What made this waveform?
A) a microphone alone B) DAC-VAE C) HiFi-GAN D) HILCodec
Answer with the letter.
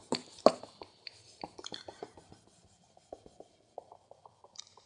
A